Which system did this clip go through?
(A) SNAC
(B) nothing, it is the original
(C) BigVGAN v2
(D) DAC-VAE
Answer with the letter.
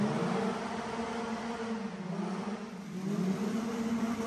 B